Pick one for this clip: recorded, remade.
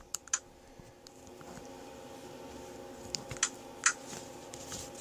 recorded